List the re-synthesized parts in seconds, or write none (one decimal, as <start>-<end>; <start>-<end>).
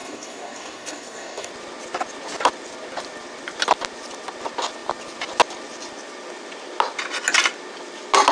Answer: 0.0-1.5